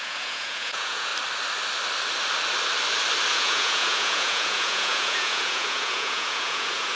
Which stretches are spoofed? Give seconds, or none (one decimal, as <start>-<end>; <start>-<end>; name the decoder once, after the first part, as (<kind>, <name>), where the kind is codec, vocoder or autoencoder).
0.0-1.1 (vocoder, Vocos); 3.3-7.0